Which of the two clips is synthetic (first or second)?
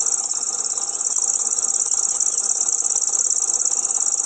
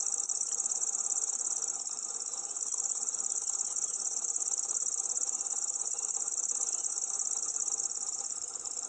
second